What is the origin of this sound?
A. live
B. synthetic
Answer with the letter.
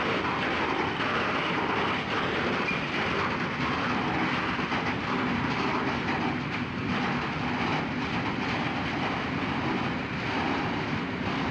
A